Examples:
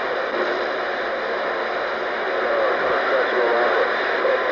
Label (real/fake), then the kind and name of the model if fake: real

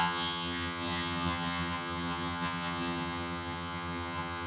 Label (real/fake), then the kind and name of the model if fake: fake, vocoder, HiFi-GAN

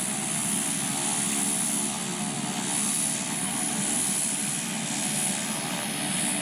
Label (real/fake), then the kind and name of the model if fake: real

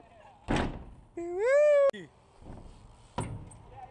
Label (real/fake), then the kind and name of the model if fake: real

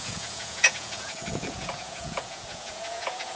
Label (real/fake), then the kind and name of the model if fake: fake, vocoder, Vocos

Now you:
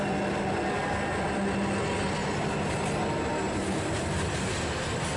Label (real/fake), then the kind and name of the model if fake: real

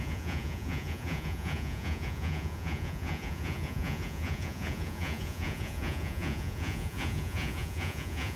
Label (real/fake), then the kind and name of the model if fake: fake, vocoder, Vocos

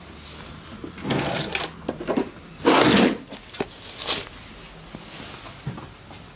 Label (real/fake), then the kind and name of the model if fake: real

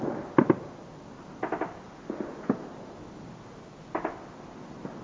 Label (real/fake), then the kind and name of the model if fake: real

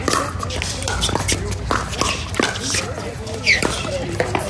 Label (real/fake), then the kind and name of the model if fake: real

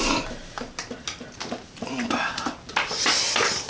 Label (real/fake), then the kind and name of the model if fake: real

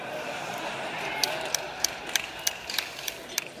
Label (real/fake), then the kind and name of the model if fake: real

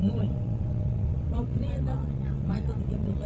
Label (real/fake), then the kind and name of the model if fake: fake, vocoder, WaveNeXt